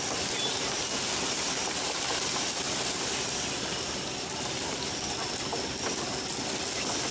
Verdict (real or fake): real